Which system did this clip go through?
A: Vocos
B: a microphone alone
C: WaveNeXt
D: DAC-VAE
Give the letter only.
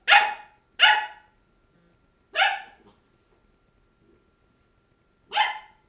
B